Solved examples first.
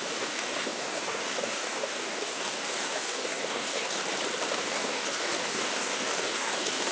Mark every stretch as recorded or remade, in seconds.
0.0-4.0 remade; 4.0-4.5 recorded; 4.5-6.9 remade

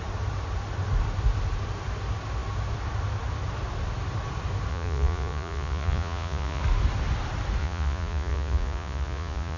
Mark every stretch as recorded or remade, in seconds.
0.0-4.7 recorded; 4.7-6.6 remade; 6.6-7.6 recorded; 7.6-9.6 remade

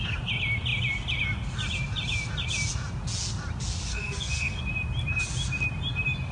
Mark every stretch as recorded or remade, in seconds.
0.0-3.9 recorded; 3.9-4.6 remade; 4.6-6.3 recorded

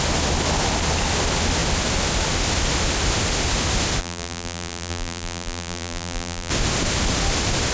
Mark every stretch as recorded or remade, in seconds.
0.0-4.0 recorded; 4.0-6.5 remade; 6.5-7.7 recorded